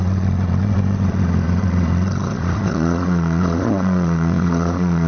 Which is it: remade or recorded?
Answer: remade